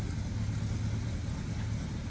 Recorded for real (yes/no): yes